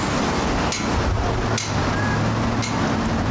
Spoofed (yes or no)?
no